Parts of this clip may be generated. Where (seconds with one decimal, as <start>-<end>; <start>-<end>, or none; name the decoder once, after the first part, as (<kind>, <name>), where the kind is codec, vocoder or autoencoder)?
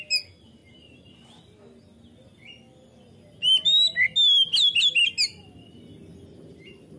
none